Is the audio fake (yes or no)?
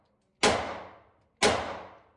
no